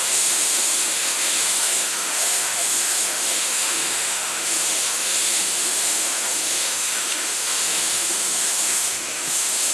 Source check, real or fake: fake